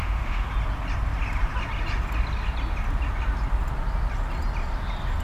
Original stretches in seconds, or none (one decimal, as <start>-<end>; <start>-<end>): 0.5-5.2